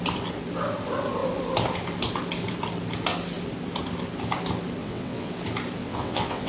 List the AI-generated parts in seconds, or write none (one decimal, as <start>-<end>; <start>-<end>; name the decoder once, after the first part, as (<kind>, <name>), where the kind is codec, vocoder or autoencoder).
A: 4.8-5.3 (vocoder, WaveNeXt); 5.8-6.5

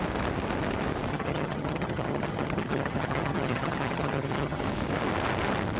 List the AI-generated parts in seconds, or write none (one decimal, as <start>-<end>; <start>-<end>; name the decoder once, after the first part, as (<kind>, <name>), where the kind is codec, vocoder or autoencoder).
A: 1.1-4.6 (vocoder, HiFi-GAN)